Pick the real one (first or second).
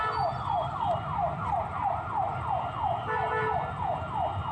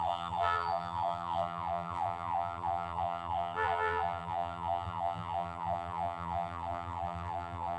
first